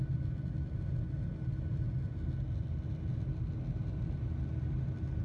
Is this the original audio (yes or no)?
yes